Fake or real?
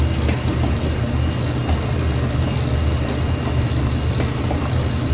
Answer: real